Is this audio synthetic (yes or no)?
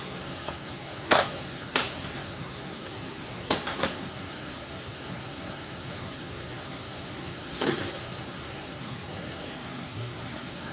yes